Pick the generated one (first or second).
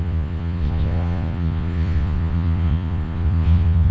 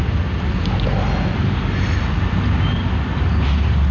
first